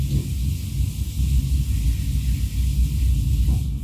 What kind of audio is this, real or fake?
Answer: real